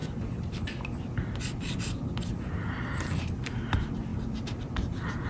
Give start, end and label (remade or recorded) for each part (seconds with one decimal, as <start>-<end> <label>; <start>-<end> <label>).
0.0-5.3 recorded